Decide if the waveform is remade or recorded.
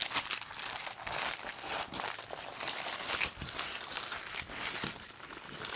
recorded